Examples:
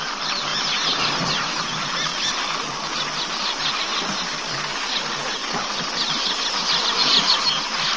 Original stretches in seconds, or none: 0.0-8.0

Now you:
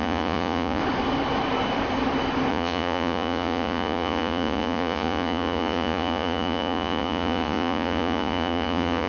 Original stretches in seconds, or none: 0.8-2.5